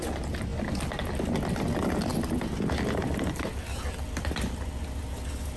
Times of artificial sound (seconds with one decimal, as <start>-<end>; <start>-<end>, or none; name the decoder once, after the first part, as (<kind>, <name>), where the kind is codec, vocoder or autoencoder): none